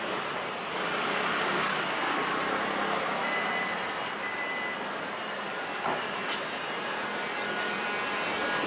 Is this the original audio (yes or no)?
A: yes